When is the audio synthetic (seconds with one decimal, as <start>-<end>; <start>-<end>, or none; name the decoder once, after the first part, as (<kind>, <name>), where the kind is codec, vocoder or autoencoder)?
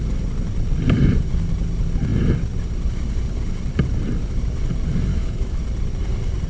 5.1-5.6 (autoencoder, DAC-VAE)